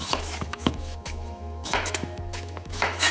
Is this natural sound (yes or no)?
no